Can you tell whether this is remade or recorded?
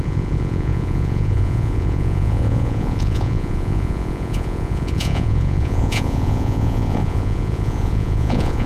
remade